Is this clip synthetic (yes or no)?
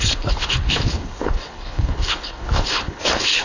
yes